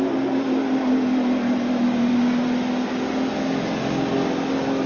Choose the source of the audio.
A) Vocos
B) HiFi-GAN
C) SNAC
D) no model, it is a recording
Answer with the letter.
D